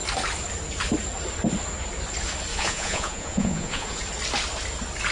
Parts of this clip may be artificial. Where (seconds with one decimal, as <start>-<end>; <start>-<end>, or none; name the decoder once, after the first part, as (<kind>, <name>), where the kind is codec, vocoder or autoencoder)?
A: 2.5-4.0 (vocoder, Vocos)